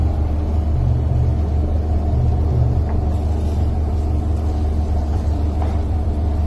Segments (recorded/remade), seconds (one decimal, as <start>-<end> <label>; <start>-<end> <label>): 0.0-5.1 recorded; 5.1-6.5 remade